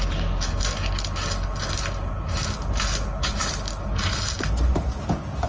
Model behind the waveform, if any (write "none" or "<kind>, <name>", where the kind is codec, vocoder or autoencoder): none